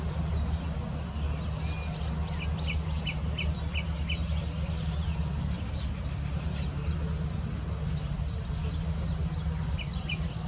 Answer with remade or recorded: recorded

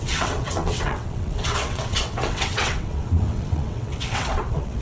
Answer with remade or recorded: remade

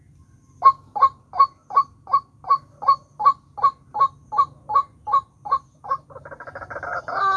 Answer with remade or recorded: recorded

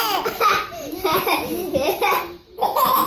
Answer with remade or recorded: remade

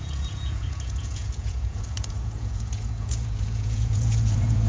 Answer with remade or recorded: remade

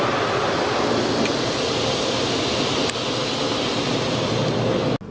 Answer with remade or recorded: recorded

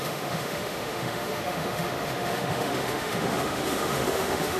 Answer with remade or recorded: remade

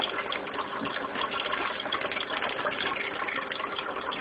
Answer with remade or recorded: recorded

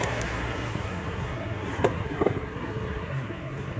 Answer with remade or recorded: remade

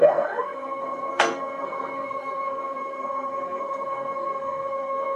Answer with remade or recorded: remade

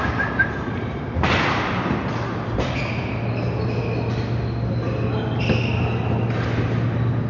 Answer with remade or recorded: recorded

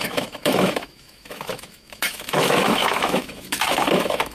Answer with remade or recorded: remade